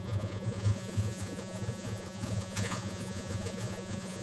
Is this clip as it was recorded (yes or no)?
no